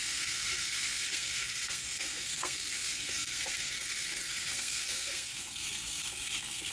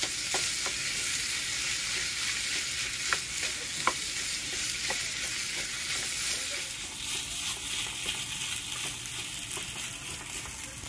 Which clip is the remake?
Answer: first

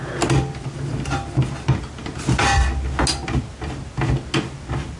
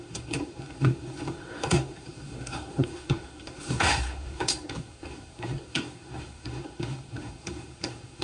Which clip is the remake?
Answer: second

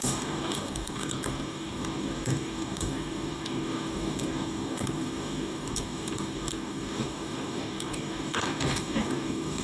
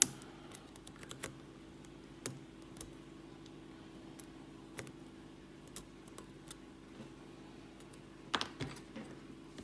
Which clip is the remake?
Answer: first